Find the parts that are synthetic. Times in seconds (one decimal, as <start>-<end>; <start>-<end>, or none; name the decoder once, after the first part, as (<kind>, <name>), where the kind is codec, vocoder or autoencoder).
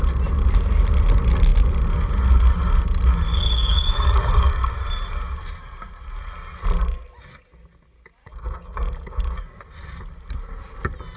3.3-4.7 (codec, DAC); 8.2-9.4